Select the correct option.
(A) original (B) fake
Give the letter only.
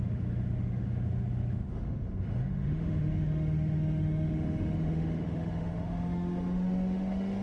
B